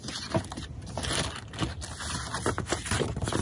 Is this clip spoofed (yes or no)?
no